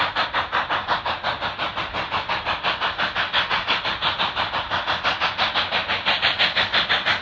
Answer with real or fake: real